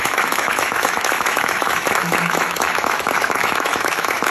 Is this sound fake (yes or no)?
yes